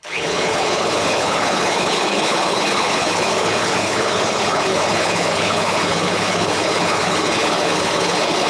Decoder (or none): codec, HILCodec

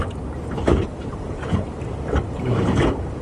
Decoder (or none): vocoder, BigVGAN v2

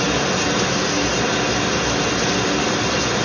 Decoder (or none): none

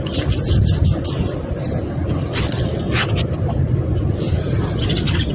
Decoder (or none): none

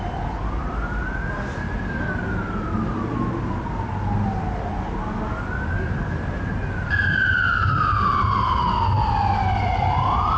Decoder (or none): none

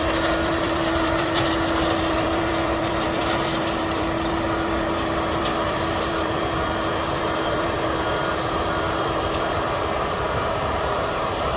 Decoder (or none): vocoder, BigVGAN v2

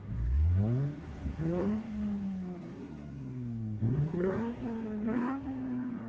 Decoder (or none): codec, SNAC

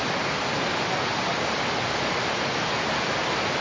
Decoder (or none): none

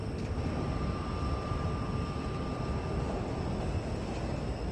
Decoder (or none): none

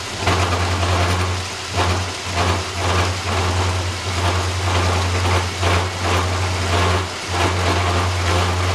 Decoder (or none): none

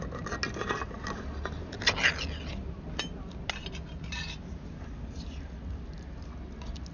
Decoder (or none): none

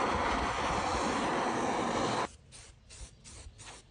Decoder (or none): vocoder, BigVGAN v2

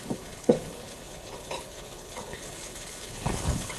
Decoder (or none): codec, HILCodec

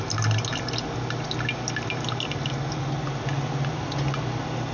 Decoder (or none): none